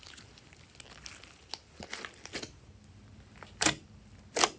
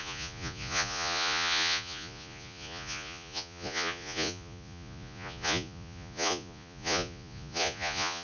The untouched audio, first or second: first